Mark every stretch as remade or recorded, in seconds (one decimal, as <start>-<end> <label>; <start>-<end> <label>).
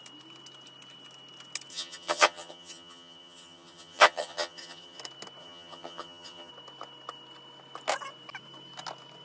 0.0-1.7 recorded; 1.7-5.0 remade; 5.0-5.4 recorded; 5.4-6.5 remade; 6.5-9.2 recorded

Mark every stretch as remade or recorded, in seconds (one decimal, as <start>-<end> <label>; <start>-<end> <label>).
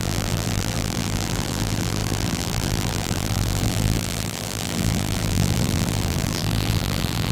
0.0-7.3 remade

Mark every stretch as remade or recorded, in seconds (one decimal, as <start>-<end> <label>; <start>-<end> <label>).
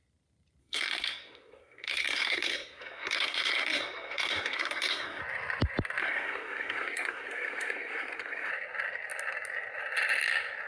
0.0-0.6 recorded; 0.6-5.2 remade; 5.2-6.0 recorded; 6.0-8.5 remade; 8.5-10.7 recorded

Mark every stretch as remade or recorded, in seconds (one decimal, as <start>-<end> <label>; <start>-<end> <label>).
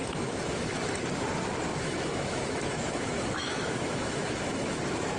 0.0-1.0 remade; 1.0-1.7 recorded; 1.7-4.8 remade; 4.8-5.2 recorded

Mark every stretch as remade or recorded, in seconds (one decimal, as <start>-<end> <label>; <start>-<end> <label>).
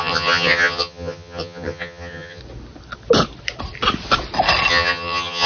0.0-2.4 remade; 2.4-4.7 recorded; 4.7-5.5 remade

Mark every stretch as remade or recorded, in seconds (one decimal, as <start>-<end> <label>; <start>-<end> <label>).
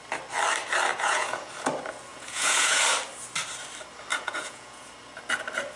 0.0-0.9 recorded; 0.9-1.5 remade; 1.5-2.1 recorded; 2.1-2.8 remade; 2.8-4.1 recorded; 4.1-4.9 remade; 4.9-5.8 recorded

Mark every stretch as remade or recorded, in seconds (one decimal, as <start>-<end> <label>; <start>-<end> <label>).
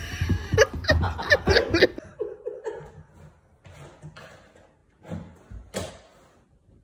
0.0-6.8 recorded